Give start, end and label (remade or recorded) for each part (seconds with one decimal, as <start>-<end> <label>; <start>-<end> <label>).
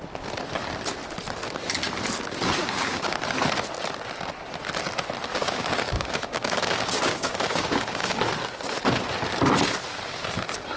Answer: 0.0-2.6 recorded; 2.6-3.2 remade; 3.2-5.3 recorded; 5.3-8.2 remade; 8.2-10.8 recorded